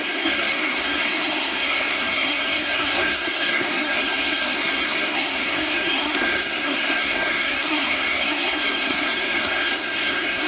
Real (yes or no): no